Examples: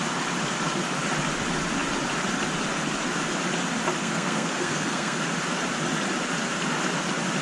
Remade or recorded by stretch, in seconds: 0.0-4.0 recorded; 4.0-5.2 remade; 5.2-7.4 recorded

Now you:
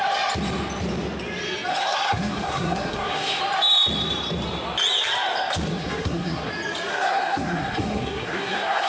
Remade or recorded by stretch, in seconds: 0.0-1.7 recorded; 1.7-3.4 remade; 3.4-5.7 recorded; 5.7-6.5 remade; 6.5-6.9 recorded; 6.9-8.9 remade

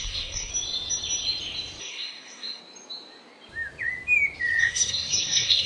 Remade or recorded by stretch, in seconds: 0.0-0.5 remade; 0.5-1.8 recorded; 1.8-2.6 remade; 2.6-4.6 recorded; 4.6-5.7 remade

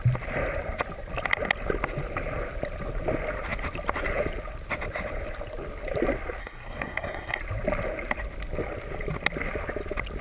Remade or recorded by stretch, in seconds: 0.0-6.4 recorded; 6.4-7.4 remade; 7.4-10.2 recorded

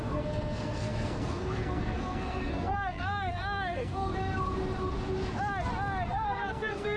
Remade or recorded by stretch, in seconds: 0.0-4.1 remade; 4.1-6.1 recorded; 6.1-7.0 remade

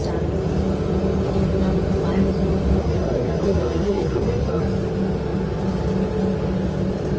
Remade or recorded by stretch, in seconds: 0.0-2.8 recorded; 2.8-4.6 remade; 4.6-7.2 recorded

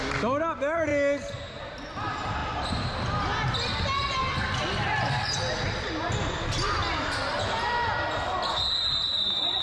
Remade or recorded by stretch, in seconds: 0.0-9.6 recorded

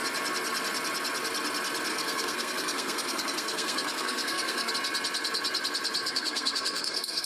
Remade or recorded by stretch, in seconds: 0.0-1.9 recorded; 1.9-4.7 remade; 4.7-6.0 recorded; 6.0-7.3 remade